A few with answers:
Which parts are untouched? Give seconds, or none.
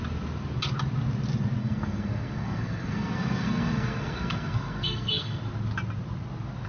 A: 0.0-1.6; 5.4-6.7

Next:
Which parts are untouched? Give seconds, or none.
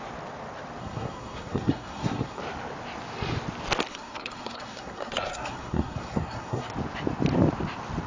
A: 0.0-0.8; 2.4-3.9; 6.7-8.1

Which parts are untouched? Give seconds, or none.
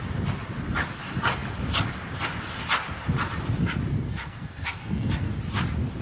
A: 0.0-3.9; 5.3-6.0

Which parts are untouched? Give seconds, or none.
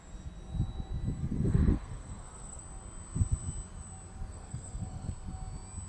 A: 0.0-1.2; 2.6-4.3; 5.1-5.9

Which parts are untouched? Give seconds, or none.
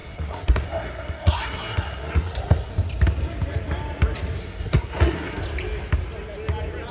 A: 2.7-4.4; 5.4-6.9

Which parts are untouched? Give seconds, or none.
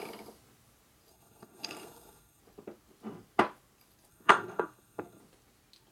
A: 0.0-1.1; 2.4-4.1; 5.2-5.9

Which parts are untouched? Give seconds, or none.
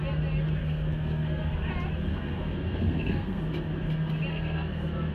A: 0.0-0.6; 1.5-2.1; 3.4-4.3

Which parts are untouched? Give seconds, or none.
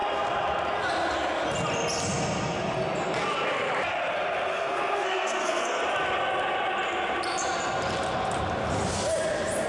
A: 0.0-4.5; 5.8-9.7